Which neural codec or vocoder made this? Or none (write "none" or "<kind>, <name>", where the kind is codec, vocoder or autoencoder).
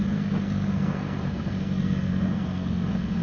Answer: codec, SNAC